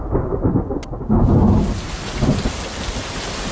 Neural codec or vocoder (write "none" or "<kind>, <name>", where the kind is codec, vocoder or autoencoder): none